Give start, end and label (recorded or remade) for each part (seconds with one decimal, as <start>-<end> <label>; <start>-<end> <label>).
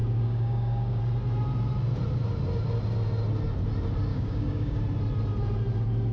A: 0.0-1.0 remade; 1.0-4.1 recorded; 4.1-4.8 remade; 4.8-6.1 recorded